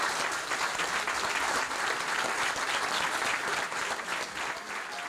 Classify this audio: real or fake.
real